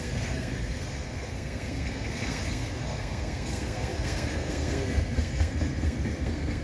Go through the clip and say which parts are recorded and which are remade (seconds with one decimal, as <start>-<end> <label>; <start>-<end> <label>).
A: 0.0-6.6 remade